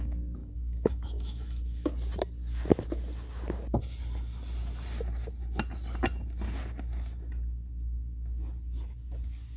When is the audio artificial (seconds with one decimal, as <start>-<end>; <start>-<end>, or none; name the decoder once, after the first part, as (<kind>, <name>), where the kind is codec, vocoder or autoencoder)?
0.4-1.9 (autoencoder, DAC-VAE)